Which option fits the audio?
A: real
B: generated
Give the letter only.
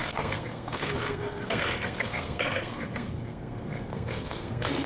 B